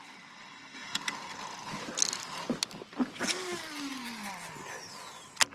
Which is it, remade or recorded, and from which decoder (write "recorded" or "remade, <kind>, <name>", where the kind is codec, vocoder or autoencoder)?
recorded